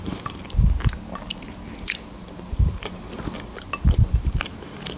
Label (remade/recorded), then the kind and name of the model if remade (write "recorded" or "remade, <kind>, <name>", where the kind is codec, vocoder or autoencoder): recorded